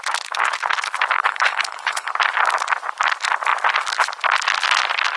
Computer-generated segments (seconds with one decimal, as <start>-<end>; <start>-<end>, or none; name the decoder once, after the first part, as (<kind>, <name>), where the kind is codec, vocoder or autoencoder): 1.2-2.1 (codec, HILCodec)